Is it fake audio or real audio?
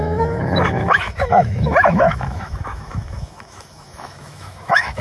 fake